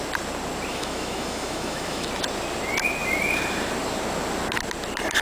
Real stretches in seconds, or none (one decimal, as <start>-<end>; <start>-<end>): 0.0-0.7; 2.1-5.2